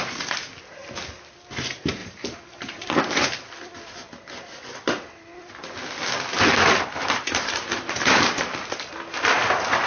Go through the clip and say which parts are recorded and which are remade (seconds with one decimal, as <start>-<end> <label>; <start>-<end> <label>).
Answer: 0.0-2.0 recorded; 2.0-3.0 remade; 3.0-7.0 recorded; 7.0-8.4 remade; 8.4-9.9 recorded